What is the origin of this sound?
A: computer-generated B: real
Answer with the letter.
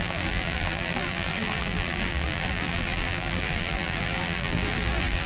A